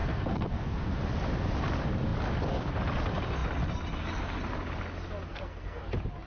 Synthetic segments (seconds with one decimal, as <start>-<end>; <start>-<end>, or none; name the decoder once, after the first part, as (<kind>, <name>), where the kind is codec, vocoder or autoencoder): 0.0-1.0 (codec, SNAC); 5.3-5.8